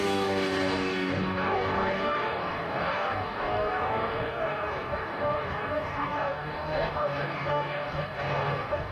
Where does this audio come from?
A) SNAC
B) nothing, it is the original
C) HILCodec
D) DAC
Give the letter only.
D